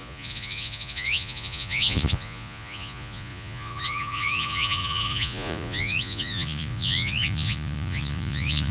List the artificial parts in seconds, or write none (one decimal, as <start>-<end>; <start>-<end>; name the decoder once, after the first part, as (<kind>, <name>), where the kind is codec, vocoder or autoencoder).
0.0-8.7 (vocoder, Vocos)